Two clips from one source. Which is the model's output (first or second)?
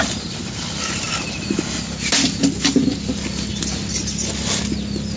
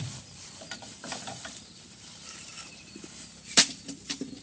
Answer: second